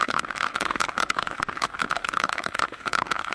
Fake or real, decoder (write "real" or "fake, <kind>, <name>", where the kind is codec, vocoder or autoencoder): fake, autoencoder, DAC-VAE